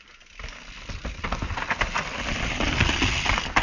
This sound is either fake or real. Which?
real